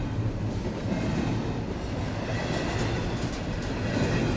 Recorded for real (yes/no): yes